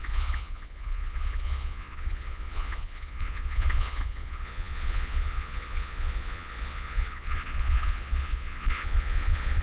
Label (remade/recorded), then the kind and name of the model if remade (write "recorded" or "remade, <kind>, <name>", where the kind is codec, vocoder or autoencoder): remade, vocoder, Vocos